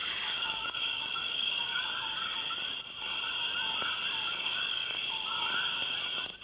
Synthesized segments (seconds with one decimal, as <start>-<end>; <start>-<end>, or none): 0.0-1.9; 4.3-5.0